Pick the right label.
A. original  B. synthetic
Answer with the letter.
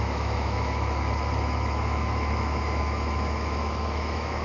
B